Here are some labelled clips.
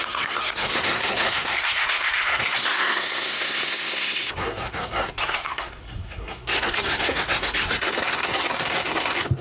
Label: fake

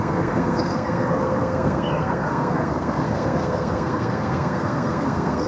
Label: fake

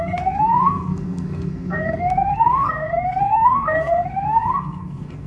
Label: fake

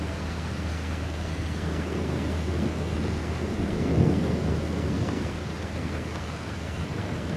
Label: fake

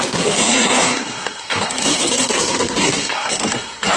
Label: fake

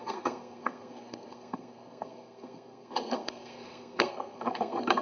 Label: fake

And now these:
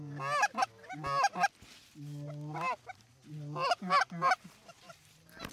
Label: real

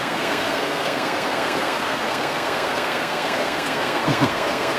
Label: fake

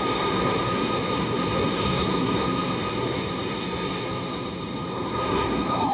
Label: fake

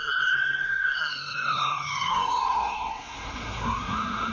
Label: fake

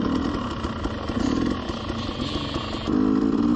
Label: real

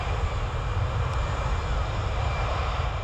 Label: real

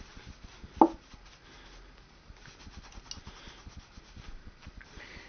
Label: real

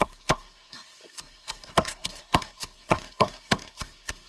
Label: fake